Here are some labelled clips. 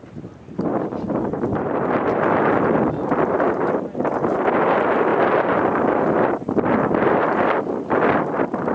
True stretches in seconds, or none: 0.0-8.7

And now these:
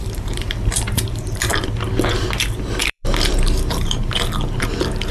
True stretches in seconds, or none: 1.5-2.8; 4.0-4.6

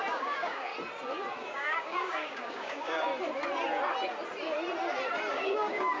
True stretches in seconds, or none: 0.7-1.4; 3.1-5.3

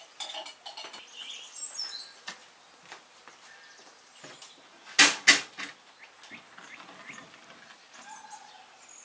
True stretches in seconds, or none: 0.0-9.0